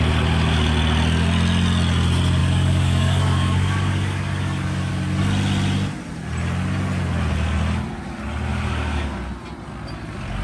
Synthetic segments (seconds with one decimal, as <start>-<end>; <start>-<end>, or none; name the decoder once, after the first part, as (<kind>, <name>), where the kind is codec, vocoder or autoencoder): 2.4-4.9 (codec, DAC); 8.5-9.2